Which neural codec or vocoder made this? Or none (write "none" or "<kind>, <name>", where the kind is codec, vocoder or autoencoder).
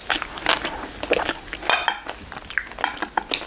none